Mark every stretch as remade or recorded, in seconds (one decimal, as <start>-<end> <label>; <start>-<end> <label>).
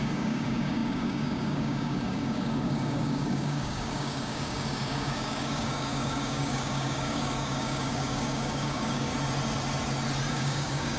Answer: 0.0-9.1 remade; 9.1-10.3 recorded; 10.3-11.0 remade